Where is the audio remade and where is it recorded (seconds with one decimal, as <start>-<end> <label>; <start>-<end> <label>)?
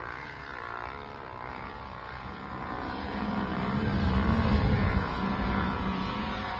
0.0-0.4 remade; 0.4-1.5 recorded; 1.5-3.5 remade; 3.5-4.6 recorded; 4.6-6.6 remade